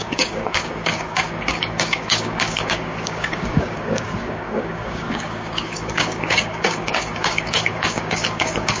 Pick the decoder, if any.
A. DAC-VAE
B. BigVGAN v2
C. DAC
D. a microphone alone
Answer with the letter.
C